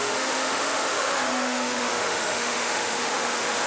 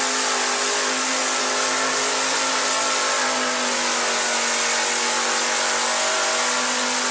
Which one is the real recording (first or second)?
second